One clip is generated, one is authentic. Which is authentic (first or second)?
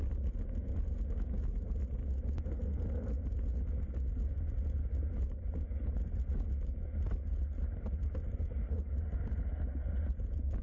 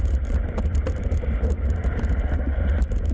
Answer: first